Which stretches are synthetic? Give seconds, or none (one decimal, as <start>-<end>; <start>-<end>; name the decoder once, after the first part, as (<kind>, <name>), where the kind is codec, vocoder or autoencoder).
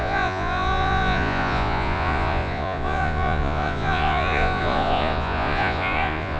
0.0-6.4 (vocoder, Vocos)